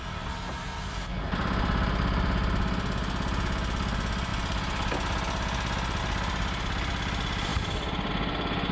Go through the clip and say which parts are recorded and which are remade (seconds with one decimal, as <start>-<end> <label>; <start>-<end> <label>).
0.0-7.5 recorded; 7.5-8.1 remade; 8.1-8.7 recorded